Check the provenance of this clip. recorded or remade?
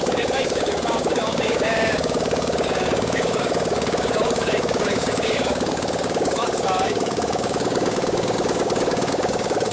remade